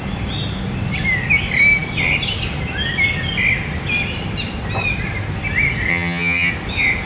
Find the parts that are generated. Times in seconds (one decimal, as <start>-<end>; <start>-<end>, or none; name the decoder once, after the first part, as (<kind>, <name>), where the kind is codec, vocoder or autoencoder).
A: 5.9-6.5 (vocoder, HiFi-GAN)

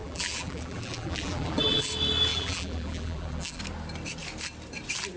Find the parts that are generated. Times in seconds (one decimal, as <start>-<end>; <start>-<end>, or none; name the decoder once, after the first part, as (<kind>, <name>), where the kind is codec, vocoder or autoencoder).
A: 0.0-1.9 (vocoder, BigVGAN v2); 2.3-3.6

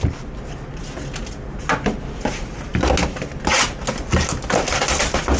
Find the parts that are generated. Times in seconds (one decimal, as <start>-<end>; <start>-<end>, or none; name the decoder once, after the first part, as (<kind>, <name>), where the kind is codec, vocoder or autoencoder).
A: none

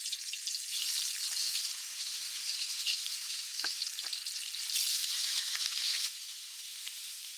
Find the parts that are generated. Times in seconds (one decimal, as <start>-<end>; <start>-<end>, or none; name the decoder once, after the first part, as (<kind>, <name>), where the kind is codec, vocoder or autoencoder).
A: 1.4-3.8 (autoencoder, DAC-VAE); 4.9-7.4